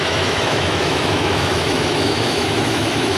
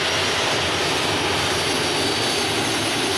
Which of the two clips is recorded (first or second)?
second